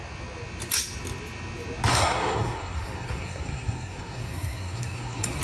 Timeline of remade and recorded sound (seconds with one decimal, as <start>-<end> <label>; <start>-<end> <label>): 0.0-1.9 recorded; 1.9-5.4 remade